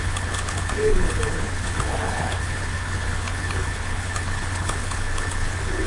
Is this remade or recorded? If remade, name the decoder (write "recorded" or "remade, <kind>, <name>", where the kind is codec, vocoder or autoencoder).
remade, codec, HILCodec